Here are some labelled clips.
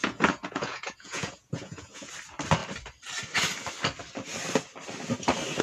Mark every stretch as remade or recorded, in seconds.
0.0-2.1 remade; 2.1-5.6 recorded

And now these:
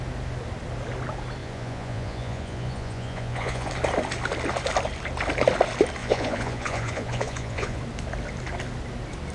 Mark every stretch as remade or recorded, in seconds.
0.0-1.4 recorded; 1.4-3.7 remade; 3.7-6.0 recorded; 6.0-7.8 remade; 7.8-9.3 recorded

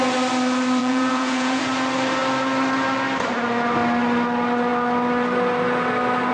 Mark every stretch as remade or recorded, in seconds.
0.0-0.8 recorded; 0.8-1.6 remade; 1.6-6.3 recorded